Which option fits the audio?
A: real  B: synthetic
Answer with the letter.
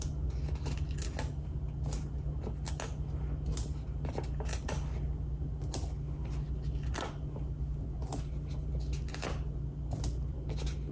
A